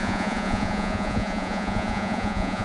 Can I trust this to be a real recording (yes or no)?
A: no